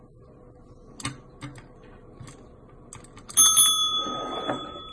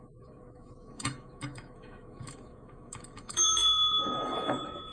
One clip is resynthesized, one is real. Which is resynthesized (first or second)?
second